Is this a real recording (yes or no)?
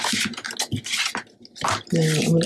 yes